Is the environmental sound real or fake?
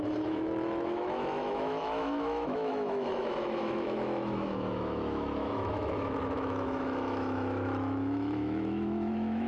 fake